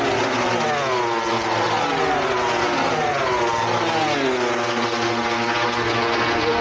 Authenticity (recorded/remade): recorded